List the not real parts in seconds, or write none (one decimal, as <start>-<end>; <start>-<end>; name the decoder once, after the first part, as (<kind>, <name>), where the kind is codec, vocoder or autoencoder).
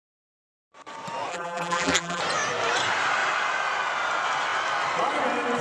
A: 1.3-2.2 (vocoder, BigVGAN v2)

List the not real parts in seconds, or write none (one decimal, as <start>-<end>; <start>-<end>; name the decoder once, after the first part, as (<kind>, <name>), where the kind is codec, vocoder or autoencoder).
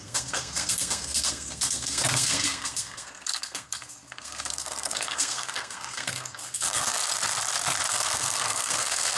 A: 0.0-7.0 (codec, SNAC); 7.9-9.2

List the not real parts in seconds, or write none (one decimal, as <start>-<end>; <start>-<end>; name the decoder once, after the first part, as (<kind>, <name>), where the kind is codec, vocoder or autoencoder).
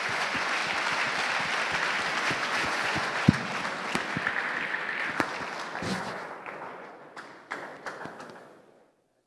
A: 0.0-0.6 (vocoder, Vocos); 2.2-3.5; 5.8-9.3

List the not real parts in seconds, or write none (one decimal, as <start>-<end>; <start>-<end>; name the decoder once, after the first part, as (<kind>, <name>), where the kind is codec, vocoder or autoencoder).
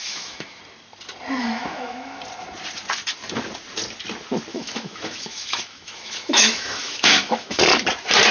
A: 0.0-0.6 (autoencoder, DAC-VAE); 1.4-2.2; 4.5-7.6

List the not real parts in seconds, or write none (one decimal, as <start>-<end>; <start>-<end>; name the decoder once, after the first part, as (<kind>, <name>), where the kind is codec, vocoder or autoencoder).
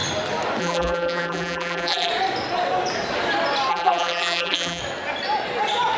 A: 0.6-2.1 (vocoder, BigVGAN v2); 3.7-4.8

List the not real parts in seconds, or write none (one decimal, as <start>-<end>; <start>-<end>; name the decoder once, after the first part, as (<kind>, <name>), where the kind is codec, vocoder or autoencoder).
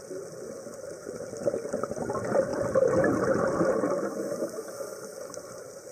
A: 2.5-3.2 (vocoder, BigVGAN v2)